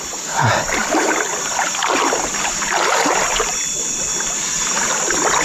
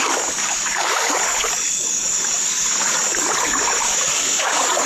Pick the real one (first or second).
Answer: first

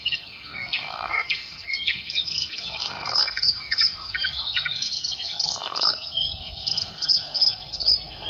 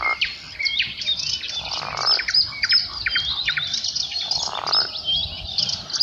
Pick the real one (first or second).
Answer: second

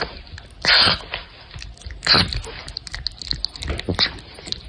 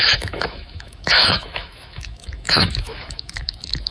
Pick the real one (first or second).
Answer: first